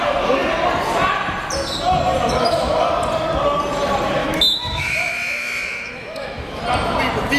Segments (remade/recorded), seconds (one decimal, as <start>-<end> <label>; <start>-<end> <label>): 0.0-4.2 recorded; 4.2-6.6 remade; 6.6-7.4 recorded